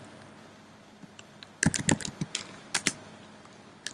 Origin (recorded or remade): recorded